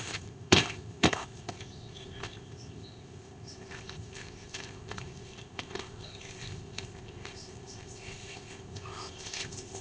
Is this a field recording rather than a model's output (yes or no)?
no